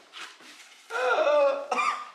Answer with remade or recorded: recorded